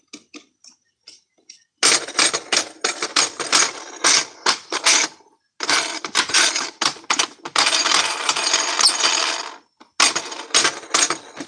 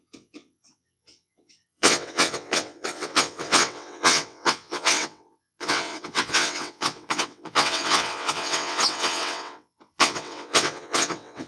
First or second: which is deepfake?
second